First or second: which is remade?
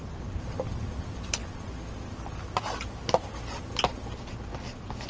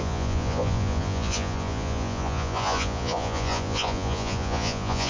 second